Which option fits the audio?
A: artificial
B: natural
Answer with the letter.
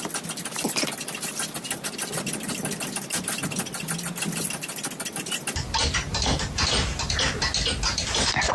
B